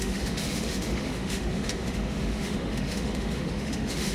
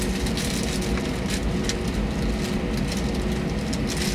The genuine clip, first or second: second